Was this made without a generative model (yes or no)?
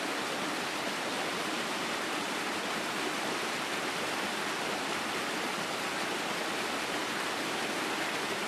yes